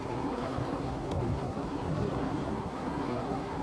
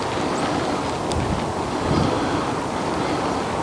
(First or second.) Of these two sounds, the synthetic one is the first